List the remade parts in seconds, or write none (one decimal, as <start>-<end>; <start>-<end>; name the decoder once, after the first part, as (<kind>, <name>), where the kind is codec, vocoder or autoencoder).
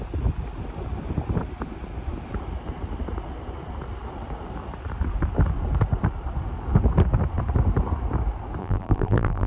8.6-9.5 (vocoder, BigVGAN v2)